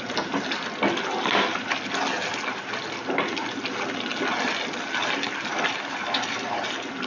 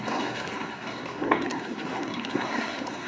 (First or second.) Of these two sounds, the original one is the first